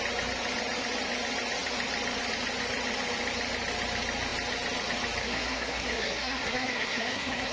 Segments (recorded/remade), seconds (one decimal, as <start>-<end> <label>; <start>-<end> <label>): 0.0-5.2 recorded; 5.2-7.5 remade

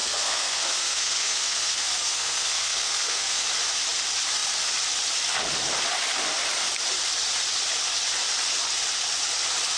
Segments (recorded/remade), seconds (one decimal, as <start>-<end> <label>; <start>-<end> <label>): 0.0-3.5 remade; 3.5-9.8 recorded

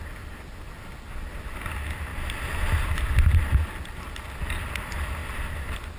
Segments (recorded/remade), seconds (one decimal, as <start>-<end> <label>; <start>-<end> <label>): 0.0-6.0 recorded

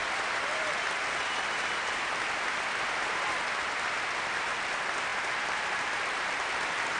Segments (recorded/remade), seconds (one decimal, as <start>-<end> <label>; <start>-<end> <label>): 0.0-7.0 recorded

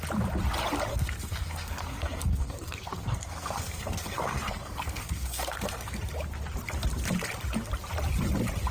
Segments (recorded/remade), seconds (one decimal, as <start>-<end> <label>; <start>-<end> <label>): 0.0-0.9 recorded; 0.9-6.0 remade; 6.0-8.7 recorded

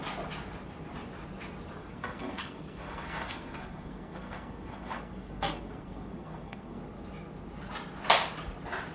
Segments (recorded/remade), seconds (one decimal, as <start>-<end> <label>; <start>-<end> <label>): 0.0-1.8 recorded; 1.8-6.8 remade; 6.8-8.9 recorded